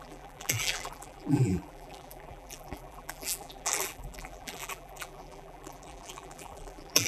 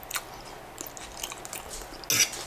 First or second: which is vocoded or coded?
first